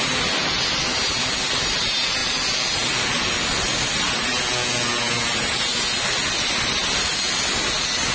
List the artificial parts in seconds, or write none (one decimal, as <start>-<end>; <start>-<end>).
none